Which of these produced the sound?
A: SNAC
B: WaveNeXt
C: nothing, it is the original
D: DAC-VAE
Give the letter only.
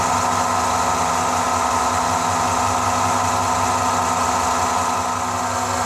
C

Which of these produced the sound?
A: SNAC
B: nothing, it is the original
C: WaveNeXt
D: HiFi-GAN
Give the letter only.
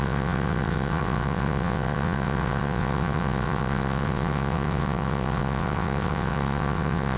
C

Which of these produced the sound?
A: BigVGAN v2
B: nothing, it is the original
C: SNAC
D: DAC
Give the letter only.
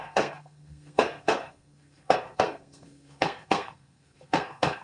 C